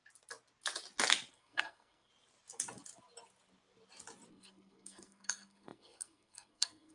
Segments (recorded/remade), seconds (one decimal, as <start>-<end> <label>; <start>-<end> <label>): 0.0-1.3 recorded; 1.3-2.1 remade; 2.1-4.3 recorded; 4.3-6.9 remade